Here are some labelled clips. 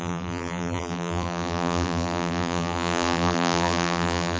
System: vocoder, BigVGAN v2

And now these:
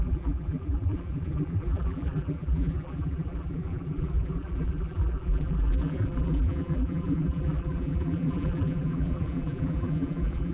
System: vocoder, BigVGAN v2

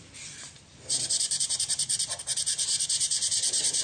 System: vocoder, BigVGAN v2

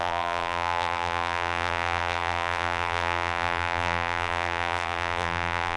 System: vocoder, BigVGAN v2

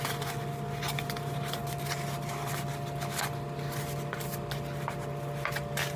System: none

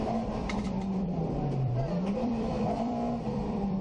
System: vocoder, BigVGAN v2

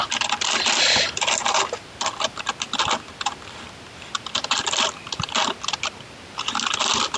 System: none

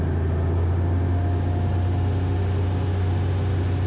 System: none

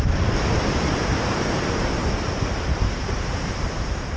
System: vocoder, BigVGAN v2